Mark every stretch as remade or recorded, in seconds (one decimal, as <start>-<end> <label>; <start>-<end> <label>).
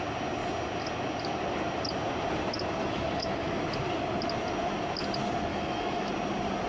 0.0-2.8 recorded; 2.8-3.6 remade; 3.6-5.5 recorded; 5.5-6.1 remade; 6.1-6.7 recorded